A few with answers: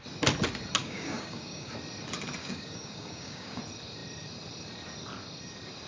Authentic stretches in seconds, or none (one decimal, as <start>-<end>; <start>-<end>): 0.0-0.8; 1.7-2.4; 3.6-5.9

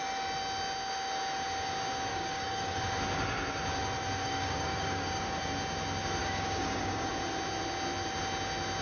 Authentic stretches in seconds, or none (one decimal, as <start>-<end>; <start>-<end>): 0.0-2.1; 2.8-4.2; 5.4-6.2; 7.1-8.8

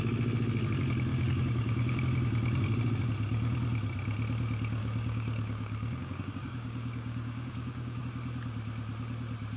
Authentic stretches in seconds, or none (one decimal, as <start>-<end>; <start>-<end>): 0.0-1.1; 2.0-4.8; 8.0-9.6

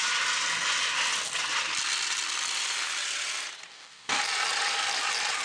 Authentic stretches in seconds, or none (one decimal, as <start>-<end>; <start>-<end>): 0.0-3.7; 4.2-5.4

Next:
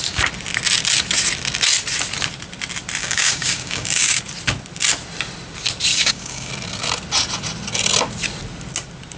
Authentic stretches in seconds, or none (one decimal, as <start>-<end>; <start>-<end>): 0.0-3.0; 4.2-5.9; 6.5-9.2